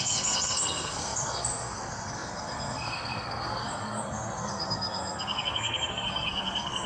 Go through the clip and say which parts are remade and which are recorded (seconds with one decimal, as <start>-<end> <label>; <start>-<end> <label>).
0.0-6.9 remade